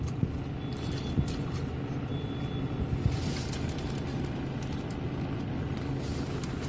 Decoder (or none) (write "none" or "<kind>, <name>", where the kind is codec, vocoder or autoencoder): none